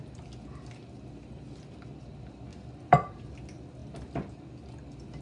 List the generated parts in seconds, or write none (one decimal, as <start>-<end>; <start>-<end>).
2.5-3.3